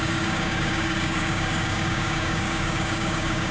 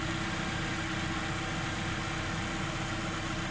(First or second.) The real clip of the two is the second